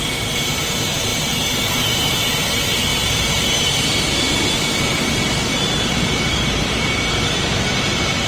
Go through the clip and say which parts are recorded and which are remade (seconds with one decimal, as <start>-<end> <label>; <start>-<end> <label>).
0.0-8.3 remade